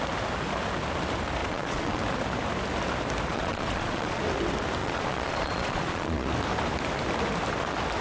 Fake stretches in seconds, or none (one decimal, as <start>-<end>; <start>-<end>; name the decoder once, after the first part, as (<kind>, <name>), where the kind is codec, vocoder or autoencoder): 1.4-2.0 (vocoder, Vocos); 3.3-4.2; 4.8-6.3